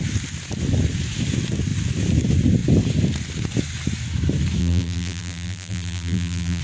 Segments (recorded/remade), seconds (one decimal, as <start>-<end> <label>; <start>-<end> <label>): 0.0-4.6 recorded; 4.6-6.6 remade